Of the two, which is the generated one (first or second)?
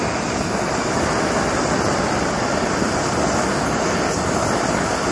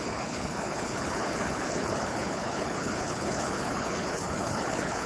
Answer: second